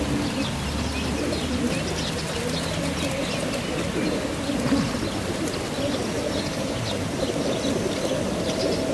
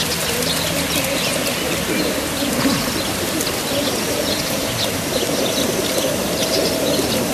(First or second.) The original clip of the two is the first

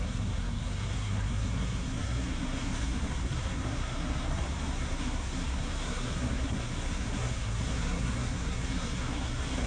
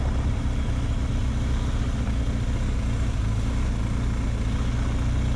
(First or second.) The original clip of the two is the second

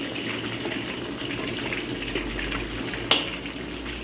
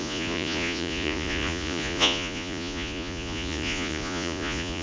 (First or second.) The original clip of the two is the first